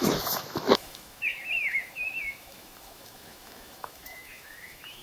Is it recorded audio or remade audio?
remade